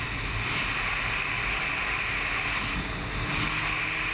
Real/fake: real